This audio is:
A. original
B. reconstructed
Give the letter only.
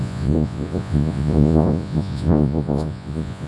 B